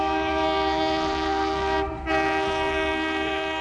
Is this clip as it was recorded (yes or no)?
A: no